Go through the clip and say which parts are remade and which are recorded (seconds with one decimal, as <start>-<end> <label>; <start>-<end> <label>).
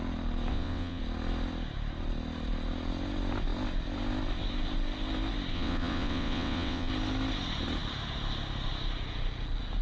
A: 0.0-0.5 recorded; 0.5-1.0 remade; 1.0-5.5 recorded; 5.5-6.9 remade; 6.9-9.8 recorded